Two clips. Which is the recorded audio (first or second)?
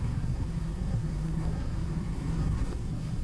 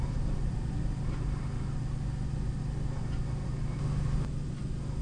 second